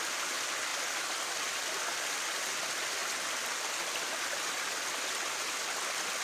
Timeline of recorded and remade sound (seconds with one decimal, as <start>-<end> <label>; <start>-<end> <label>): 0.0-6.2 recorded

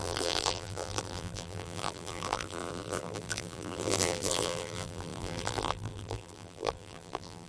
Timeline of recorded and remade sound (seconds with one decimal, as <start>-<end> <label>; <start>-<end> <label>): 0.0-7.5 remade

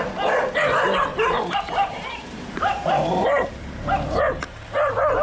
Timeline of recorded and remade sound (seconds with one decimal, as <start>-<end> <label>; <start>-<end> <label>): 0.0-1.1 recorded; 1.1-4.2 remade; 4.2-5.2 recorded

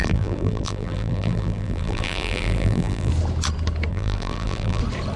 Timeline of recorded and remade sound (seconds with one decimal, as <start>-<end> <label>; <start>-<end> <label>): 0.0-3.1 remade; 3.1-3.9 recorded; 3.9-4.8 remade; 4.8-5.2 recorded

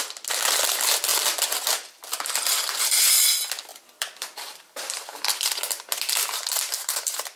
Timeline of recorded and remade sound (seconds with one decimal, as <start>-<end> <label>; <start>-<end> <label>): 0.0-3.7 recorded; 3.7-6.1 remade; 6.1-7.4 recorded

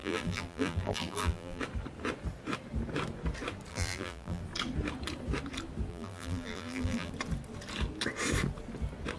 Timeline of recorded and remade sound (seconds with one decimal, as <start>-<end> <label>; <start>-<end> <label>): 0.0-1.6 remade; 1.6-3.7 recorded; 3.7-4.4 remade; 4.4-5.9 recorded; 5.9-7.1 remade; 7.1-9.2 recorded

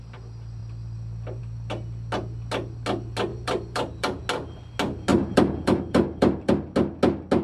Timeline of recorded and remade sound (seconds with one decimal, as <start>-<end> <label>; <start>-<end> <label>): 0.0-3.3 recorded; 3.3-4.2 remade; 4.2-5.1 recorded; 5.1-6.5 remade; 6.5-7.4 recorded

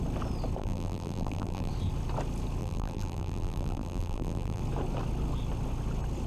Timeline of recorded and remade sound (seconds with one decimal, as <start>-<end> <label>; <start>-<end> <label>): 0.0-0.6 recorded; 0.6-1.7 remade; 1.7-2.6 recorded; 2.6-4.6 remade; 4.6-6.3 recorded